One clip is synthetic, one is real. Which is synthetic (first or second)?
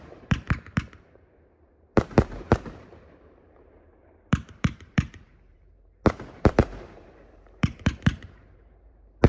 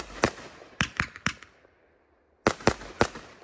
first